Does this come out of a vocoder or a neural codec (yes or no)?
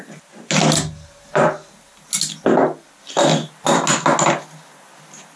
no